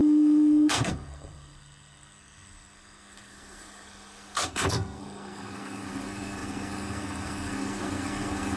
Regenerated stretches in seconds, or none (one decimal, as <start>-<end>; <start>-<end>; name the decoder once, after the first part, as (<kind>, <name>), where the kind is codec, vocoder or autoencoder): 0.0-8.6 (codec, SNAC)